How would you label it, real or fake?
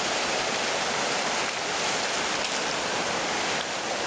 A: real